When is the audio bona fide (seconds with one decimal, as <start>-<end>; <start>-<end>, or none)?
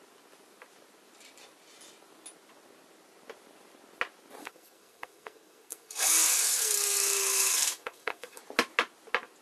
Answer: 0.0-4.4; 8.4-9.4